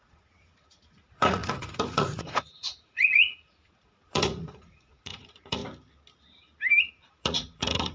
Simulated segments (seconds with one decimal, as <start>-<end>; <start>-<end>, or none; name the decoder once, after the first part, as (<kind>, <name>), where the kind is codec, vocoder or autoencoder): 0.0-5.6 (vocoder, Vocos); 6.9-7.9

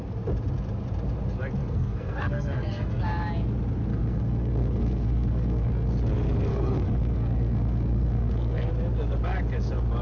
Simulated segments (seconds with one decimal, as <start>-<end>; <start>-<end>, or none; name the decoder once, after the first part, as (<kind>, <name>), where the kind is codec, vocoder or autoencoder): 1.6-3.0 (codec, SNAC); 3.9-5.9; 6.5-8.7

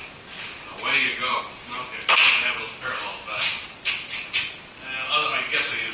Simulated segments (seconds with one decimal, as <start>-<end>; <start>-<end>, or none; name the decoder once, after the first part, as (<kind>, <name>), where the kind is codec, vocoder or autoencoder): none

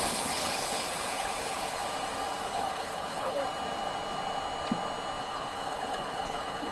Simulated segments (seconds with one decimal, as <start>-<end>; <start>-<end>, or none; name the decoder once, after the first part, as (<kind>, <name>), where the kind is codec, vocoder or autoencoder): 0.0-1.8 (codec, HILCodec); 2.4-3.4; 5.2-6.7

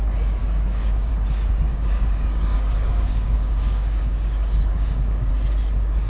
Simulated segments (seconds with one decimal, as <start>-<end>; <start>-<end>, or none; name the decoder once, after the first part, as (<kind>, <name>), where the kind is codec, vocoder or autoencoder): 0.4-1.1 (codec, DAC); 1.7-5.3

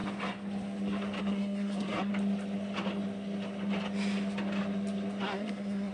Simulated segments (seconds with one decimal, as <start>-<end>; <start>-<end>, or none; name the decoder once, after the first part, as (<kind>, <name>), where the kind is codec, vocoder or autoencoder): 1.2-2.1 (codec, SNAC); 5.2-5.9

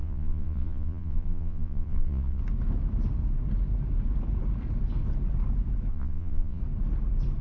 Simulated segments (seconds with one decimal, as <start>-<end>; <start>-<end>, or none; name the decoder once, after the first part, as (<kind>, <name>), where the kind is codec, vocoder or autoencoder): 0.0-2.4 (vocoder, Vocos); 5.9-6.6

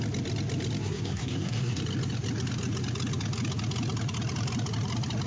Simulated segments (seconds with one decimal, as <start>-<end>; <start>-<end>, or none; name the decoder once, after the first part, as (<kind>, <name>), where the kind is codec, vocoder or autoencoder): 0.8-1.8 (codec, SNAC)